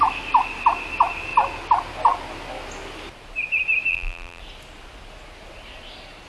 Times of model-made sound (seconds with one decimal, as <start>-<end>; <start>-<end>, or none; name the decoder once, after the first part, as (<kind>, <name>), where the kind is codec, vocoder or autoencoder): 3.9-4.4 (vocoder, BigVGAN v2)